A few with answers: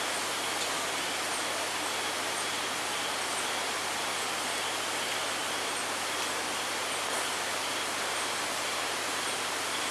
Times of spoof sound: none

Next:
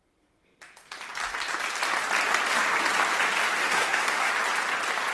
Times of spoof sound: 3.6-4.3 (codec, SNAC)

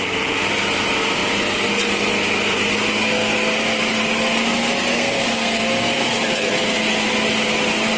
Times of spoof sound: 4.9-5.6 (codec, SNAC)

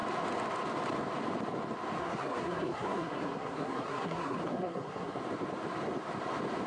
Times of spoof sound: 2.0-5.2 (codec, SNAC)

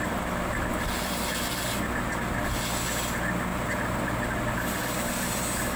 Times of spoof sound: none

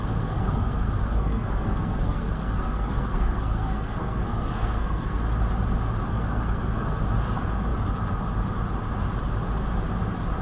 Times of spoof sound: 0.0-5.2 (codec, SNAC); 6.1-7.0

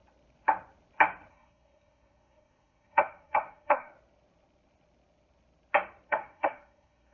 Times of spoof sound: 1.3-3.9 (codec, SNAC); 6.1-7.1